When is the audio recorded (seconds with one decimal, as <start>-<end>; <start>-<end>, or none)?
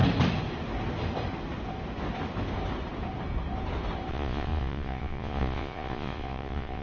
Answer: 0.0-4.1